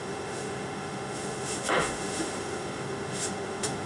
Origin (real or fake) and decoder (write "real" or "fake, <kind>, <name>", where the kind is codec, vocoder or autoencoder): fake, autoencoder, DAC-VAE